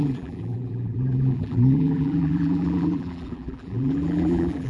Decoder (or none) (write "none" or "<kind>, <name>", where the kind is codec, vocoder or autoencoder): vocoder, BigVGAN v2